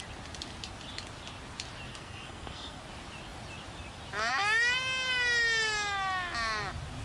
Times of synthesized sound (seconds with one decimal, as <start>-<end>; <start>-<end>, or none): 1.9-2.8